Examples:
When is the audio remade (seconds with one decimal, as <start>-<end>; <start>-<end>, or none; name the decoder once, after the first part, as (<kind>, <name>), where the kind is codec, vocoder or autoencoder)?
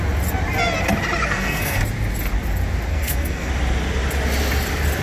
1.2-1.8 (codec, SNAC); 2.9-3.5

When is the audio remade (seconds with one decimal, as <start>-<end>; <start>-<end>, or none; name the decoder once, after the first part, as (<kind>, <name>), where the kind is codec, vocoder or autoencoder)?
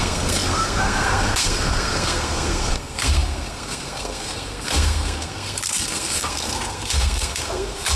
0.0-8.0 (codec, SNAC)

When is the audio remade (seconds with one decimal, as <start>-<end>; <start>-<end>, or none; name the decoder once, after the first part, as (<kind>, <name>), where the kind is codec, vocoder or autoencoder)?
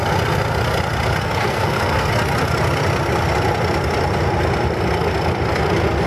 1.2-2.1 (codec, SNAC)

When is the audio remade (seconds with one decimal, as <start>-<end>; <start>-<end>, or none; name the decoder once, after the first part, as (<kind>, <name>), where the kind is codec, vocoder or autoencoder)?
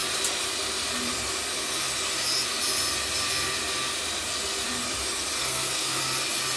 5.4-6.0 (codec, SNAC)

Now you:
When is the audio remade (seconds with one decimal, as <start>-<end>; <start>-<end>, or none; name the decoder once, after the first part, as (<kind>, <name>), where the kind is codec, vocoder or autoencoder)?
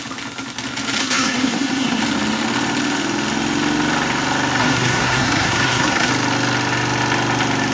1.0-2.0 (codec, SNAC); 4.6-6.1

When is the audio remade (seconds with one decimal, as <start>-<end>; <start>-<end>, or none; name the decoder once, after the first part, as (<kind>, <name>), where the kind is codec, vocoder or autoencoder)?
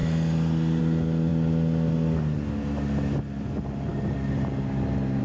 none